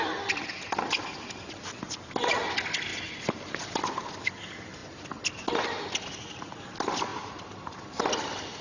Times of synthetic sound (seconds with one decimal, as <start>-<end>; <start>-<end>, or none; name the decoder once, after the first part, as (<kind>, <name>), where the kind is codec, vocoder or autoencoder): 7.1-8.0 (vocoder, BigVGAN v2)